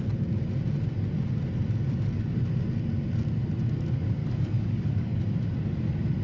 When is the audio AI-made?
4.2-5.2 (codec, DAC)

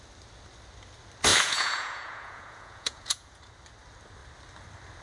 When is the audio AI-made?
1.3-3.4 (vocoder, Vocos)

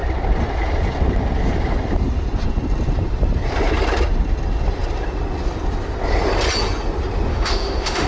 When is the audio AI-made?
7.3-8.1 (autoencoder, DAC-VAE)

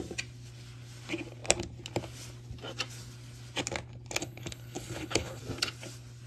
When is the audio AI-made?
4.2-5.4 (codec, HILCodec)

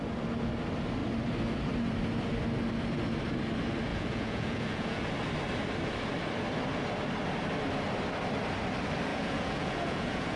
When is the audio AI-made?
3.9-5.1 (vocoder, Vocos); 9.1-10.4